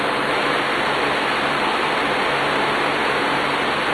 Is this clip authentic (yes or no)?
yes